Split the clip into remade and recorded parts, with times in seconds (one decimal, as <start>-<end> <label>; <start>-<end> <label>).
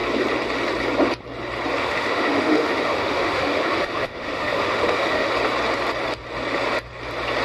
0.0-1.8 recorded; 1.8-5.3 remade; 5.3-7.4 recorded